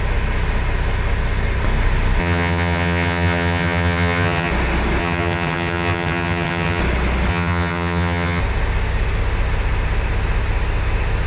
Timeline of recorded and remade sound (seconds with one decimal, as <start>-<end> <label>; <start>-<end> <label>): 0.0-2.2 recorded; 2.2-4.5 remade; 4.5-5.0 recorded; 5.0-6.8 remade; 6.8-7.3 recorded; 7.3-8.4 remade; 8.4-11.3 recorded